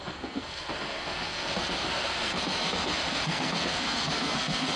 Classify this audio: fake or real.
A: fake